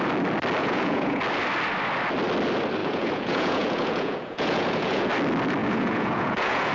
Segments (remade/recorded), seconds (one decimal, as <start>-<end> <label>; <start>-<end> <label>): 0.0-0.6 recorded; 0.6-1.2 remade; 1.2-2.8 recorded; 2.8-5.1 remade; 5.1-5.6 recorded; 5.6-6.7 remade